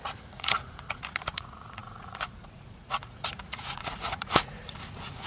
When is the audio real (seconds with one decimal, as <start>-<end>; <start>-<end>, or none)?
none